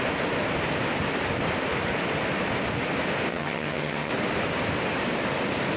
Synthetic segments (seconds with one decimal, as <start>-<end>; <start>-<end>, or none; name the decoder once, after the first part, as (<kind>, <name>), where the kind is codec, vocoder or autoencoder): 3.3-4.1 (vocoder, HiFi-GAN)